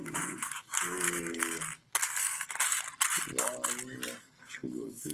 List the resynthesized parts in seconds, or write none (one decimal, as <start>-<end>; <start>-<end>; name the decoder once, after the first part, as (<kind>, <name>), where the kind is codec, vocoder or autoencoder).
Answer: 0.0-2.7 (codec, SNAC); 4.2-5.1